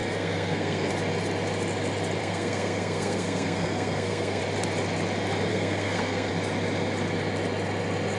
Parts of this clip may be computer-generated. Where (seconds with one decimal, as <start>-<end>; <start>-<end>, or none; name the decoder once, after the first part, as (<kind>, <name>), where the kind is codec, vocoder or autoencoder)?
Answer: 0.0-0.9 (codec, SNAC); 2.2-4.4; 5.5-6.3